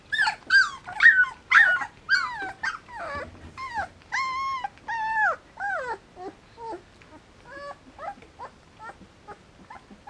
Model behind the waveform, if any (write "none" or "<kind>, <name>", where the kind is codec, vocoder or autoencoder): none